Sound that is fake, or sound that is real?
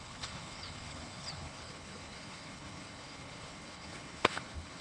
fake